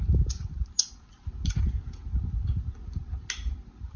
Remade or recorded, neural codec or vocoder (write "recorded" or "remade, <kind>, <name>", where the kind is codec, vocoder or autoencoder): recorded